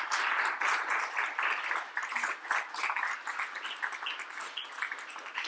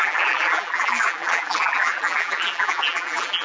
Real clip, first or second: first